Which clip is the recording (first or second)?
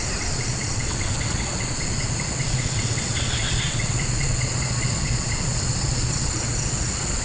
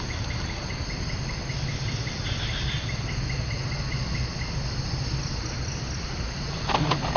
second